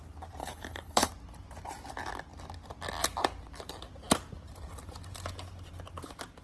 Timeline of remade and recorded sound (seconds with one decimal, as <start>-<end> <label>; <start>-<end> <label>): 0.0-0.4 recorded; 0.4-1.1 remade; 1.1-6.4 recorded